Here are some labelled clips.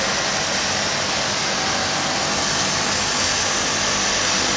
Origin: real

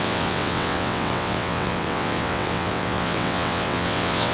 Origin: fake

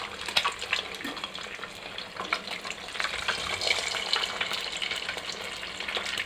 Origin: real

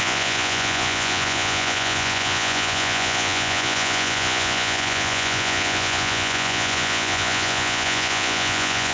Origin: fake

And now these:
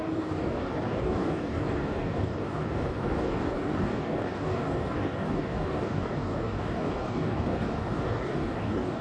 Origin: fake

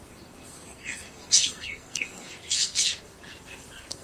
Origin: fake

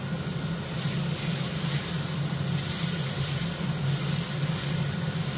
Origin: real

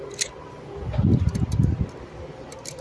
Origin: real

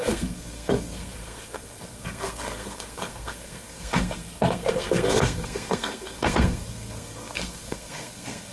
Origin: fake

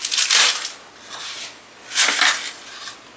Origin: real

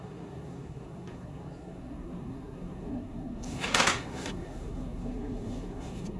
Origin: fake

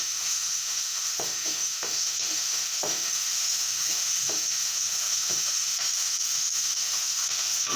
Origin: fake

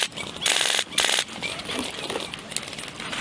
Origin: real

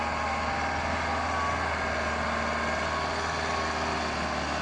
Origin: real